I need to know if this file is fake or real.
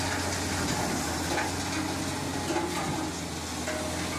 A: real